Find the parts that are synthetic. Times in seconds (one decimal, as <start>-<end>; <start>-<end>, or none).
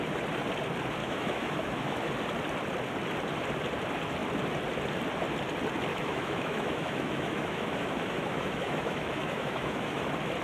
1.0-2.1; 5.9-10.0